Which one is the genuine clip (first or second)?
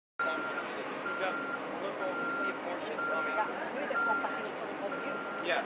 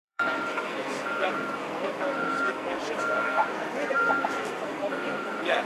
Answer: first